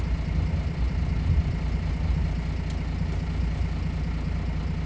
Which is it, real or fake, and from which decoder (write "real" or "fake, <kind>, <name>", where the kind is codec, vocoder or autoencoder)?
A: real